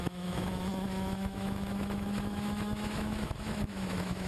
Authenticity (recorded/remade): remade